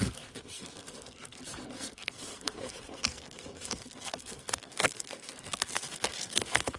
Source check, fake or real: fake